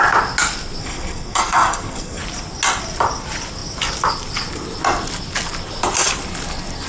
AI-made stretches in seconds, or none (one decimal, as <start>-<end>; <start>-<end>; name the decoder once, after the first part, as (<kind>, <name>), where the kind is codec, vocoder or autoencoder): 0.8-2.2 (codec, SNAC)